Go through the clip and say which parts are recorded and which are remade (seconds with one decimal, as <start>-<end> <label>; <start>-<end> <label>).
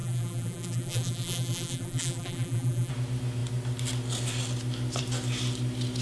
0.0-2.9 remade; 2.9-6.0 recorded